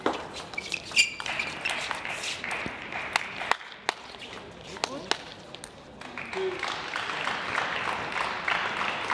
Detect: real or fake real